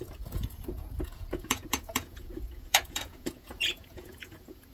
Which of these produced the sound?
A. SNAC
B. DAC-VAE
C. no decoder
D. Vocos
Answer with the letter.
D